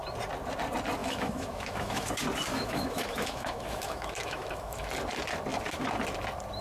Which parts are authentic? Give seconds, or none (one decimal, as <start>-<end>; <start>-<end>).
0.0-1.0; 2.1-2.5; 4.9-6.6